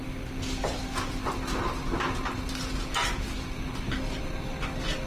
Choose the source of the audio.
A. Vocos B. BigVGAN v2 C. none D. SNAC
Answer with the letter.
C